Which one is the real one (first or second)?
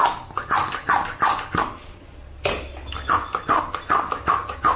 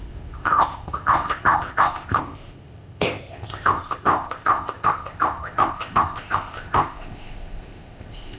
first